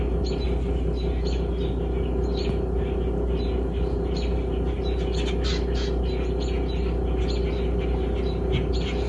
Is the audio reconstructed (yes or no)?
no